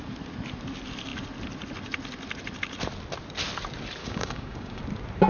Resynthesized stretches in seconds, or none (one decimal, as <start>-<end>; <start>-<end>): 4.0-4.8